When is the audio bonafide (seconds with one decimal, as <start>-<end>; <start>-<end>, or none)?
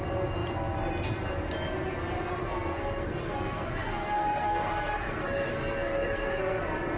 0.0-2.4; 6.6-7.0